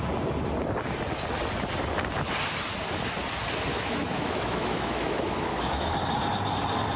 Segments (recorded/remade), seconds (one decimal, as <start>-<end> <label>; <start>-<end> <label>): 0.0-3.7 recorded; 3.7-5.9 remade; 5.9-7.0 recorded